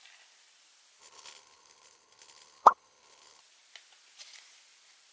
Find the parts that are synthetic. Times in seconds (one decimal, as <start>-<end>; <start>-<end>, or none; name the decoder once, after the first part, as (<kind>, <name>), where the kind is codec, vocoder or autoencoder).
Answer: 1.0-3.4 (codec, HILCodec)